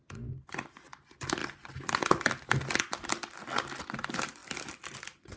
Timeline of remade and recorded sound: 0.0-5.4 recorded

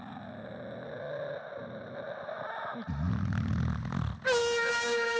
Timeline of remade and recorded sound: 0.0-4.4 recorded; 4.4-5.2 remade

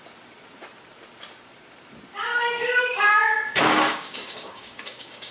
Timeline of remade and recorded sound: 0.0-2.3 recorded; 2.3-5.3 remade

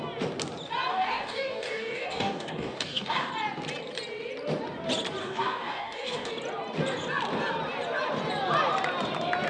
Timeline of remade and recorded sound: 0.0-0.9 recorded; 0.9-3.3 remade; 3.3-5.2 recorded; 5.2-6.3 remade; 6.3-9.5 recorded